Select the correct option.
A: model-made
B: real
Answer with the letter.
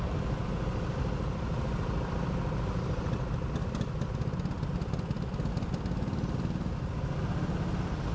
B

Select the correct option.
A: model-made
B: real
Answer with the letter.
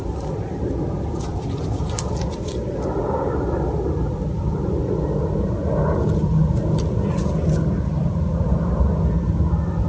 B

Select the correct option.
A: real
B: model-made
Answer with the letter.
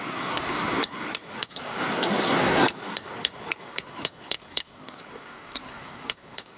B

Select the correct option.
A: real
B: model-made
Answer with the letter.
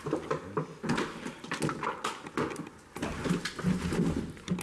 A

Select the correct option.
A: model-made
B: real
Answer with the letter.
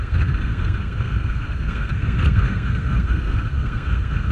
A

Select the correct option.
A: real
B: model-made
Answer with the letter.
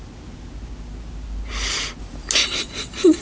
A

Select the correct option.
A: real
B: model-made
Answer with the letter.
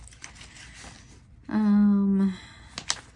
A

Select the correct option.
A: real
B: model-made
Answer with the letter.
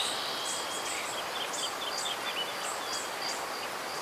A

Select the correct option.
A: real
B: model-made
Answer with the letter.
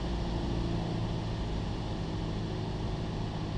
A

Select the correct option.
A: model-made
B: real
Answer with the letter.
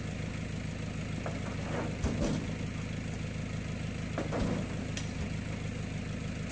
B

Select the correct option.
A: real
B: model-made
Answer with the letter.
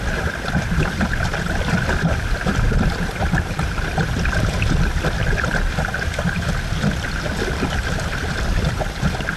A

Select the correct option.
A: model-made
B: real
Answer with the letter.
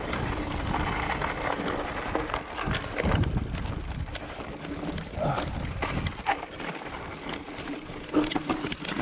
B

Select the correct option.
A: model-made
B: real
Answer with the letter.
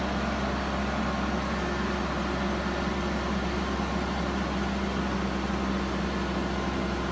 B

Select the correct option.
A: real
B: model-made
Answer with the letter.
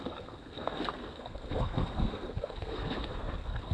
B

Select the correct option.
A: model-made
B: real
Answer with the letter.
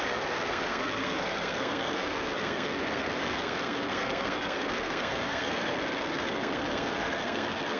A